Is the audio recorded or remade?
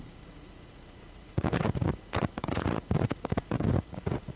remade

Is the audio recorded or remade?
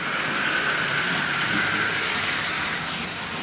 recorded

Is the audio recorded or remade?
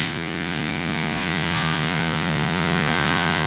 remade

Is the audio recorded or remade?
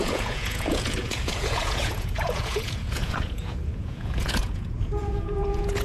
remade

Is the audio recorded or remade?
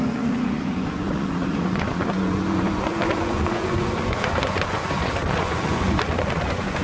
remade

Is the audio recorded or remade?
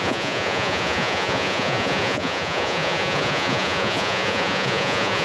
remade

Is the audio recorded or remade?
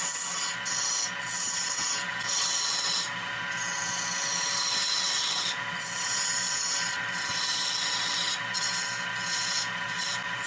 recorded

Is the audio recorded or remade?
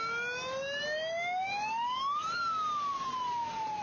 recorded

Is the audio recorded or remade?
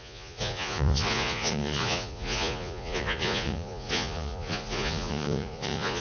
remade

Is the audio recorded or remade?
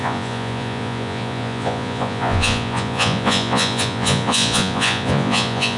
remade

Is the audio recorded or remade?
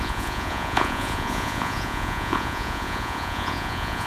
remade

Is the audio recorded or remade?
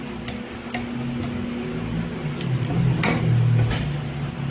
recorded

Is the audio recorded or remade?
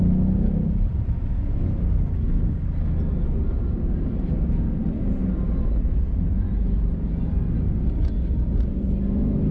recorded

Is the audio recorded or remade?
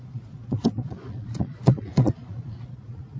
remade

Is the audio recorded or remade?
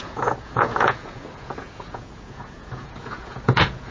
remade